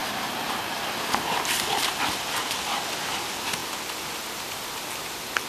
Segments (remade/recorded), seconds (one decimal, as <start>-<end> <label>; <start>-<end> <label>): 0.0-1.9 remade; 1.9-5.5 recorded

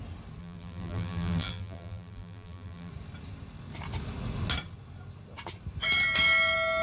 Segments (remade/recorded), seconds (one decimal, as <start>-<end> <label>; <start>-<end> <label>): 0.0-0.4 recorded; 0.4-2.9 remade; 2.9-6.8 recorded

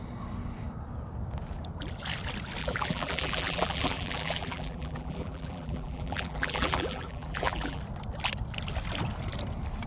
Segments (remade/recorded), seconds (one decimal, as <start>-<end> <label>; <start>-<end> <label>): 0.0-2.6 recorded; 2.6-7.8 remade; 7.8-9.9 recorded

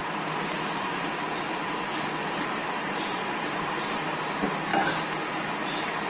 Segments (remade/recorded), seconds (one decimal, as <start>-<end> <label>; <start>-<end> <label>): 0.0-1.2 remade; 1.2-2.2 recorded; 2.2-4.3 remade; 4.3-6.1 recorded